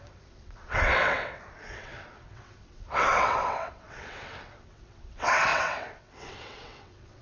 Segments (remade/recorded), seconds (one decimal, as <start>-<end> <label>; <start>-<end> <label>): 0.0-7.2 remade